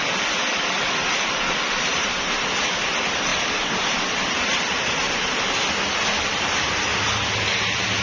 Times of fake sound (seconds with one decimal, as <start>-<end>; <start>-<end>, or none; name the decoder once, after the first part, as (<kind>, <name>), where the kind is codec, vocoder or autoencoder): none